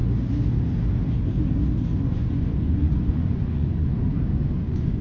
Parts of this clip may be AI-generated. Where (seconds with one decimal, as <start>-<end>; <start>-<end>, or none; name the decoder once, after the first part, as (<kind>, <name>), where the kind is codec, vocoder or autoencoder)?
2.1-3.9 (vocoder, Vocos); 4.5-5.0